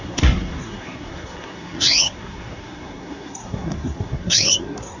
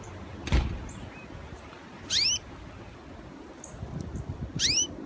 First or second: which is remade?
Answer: first